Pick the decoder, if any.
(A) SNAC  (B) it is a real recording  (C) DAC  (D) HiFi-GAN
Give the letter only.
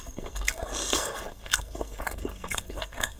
A